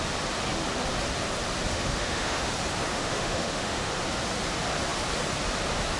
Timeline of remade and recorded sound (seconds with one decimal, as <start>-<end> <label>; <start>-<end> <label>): 0.0-1.7 recorded; 1.7-2.5 remade; 2.5-2.9 recorded; 2.9-3.9 remade; 3.9-6.0 recorded